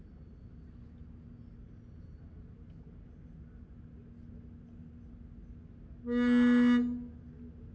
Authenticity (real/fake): real